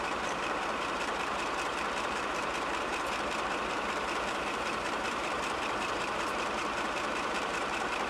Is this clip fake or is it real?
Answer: fake